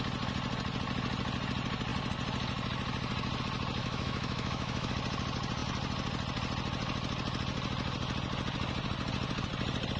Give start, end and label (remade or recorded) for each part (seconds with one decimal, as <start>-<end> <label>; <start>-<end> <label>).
0.0-3.8 recorded; 3.8-4.9 remade; 4.9-10.0 recorded